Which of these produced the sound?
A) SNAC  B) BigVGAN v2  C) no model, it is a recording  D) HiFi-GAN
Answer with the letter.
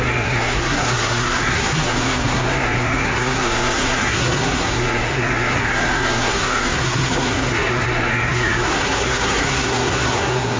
A